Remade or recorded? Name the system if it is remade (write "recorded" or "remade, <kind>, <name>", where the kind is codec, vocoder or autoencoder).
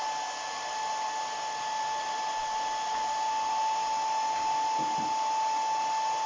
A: recorded